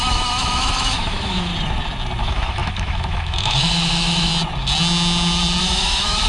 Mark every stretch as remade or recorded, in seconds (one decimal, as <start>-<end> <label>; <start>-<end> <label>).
0.0-1.5 remade; 1.5-2.2 recorded; 2.2-4.3 remade; 4.3-5.6 recorded; 5.6-6.3 remade